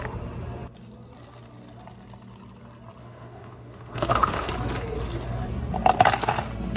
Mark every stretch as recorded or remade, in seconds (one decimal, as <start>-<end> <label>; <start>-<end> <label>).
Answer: 0.0-3.0 recorded; 3.0-4.5 remade; 4.5-6.8 recorded